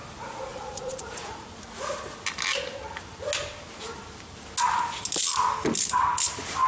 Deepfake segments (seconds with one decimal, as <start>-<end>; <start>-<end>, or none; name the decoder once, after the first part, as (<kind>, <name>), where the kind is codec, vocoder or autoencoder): 0.5-1.5 (vocoder, Vocos)